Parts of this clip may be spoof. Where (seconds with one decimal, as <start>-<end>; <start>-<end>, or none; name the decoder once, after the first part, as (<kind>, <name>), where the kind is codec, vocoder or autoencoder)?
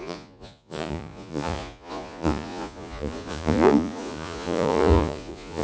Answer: 0.0-5.6 (vocoder, Vocos)